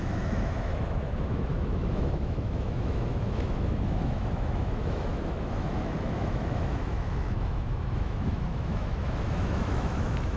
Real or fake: fake